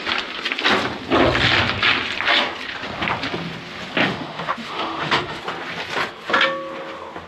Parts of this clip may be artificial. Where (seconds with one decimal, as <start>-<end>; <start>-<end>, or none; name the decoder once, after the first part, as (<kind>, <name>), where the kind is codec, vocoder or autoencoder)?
4.0-5.4 (autoencoder, DAC-VAE)